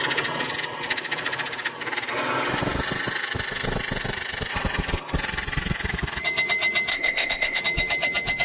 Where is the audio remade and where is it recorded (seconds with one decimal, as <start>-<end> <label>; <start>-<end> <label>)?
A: 0.0-6.9 recorded; 6.9-7.6 remade; 7.6-8.4 recorded